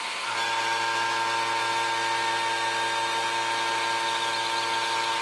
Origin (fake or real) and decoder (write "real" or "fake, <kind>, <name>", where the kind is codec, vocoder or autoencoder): real